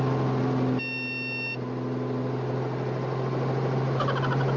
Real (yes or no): yes